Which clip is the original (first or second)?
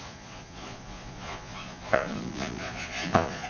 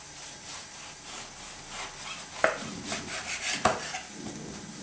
second